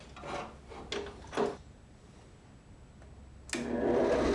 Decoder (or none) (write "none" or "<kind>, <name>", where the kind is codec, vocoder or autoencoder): none